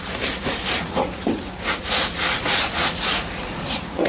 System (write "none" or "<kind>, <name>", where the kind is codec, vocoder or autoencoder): vocoder, Vocos